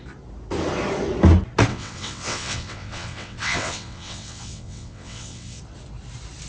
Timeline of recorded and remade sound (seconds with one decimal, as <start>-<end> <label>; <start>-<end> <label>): 0.0-1.7 recorded; 1.7-5.6 remade; 5.6-6.5 recorded